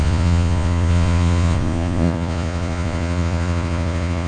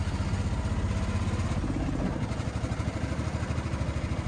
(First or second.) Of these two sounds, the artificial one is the first